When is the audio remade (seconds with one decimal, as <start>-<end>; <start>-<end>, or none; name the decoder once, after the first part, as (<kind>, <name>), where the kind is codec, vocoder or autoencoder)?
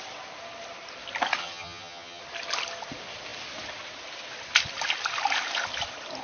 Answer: 1.4-2.2 (vocoder, HiFi-GAN)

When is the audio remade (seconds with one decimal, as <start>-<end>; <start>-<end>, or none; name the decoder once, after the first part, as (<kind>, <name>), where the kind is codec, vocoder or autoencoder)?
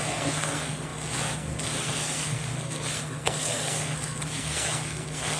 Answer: 0.0-5.4 (codec, SNAC)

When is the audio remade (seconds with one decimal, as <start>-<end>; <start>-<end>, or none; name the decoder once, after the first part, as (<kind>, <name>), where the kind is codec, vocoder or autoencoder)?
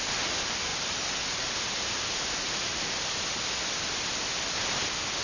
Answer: none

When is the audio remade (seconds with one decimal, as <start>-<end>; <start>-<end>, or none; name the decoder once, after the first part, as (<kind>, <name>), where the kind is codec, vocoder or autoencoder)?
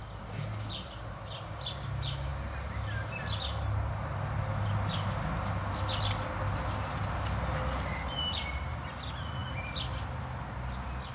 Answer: none